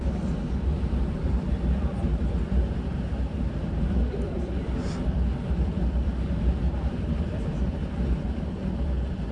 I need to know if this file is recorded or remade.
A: remade